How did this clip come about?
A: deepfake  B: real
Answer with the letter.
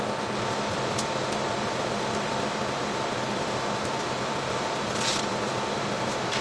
A